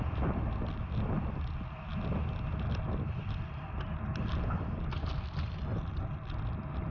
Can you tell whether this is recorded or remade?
recorded